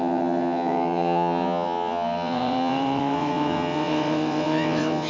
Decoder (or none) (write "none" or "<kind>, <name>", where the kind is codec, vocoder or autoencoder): vocoder, WaveNeXt